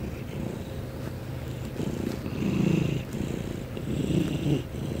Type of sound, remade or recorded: recorded